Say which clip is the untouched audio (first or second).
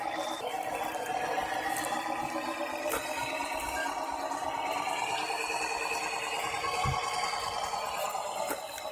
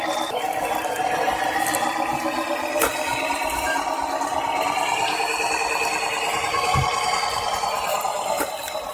first